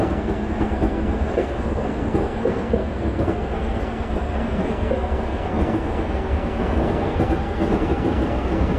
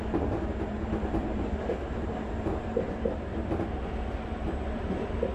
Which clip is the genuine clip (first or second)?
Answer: second